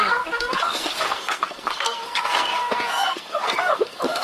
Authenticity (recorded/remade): remade